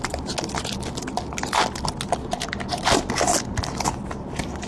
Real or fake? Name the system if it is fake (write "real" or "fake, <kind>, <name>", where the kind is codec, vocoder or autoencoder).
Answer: real